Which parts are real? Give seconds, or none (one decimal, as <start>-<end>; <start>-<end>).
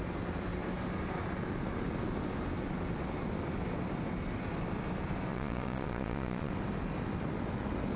0.0-5.3; 6.5-8.0